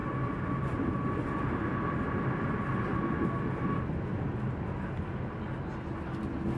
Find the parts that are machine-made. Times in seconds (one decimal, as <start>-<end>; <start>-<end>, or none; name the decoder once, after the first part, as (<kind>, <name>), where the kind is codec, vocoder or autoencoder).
none